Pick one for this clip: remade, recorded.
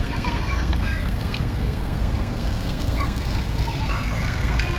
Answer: remade